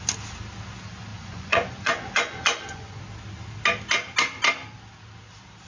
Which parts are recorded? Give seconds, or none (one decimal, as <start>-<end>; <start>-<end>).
0.0-1.1; 3.0-5.7